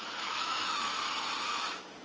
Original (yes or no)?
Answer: no